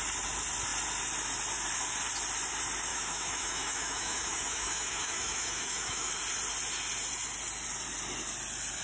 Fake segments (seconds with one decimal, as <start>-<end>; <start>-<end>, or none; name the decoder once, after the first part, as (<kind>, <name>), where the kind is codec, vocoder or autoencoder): 2.9-6.1 (autoencoder, DAC-VAE)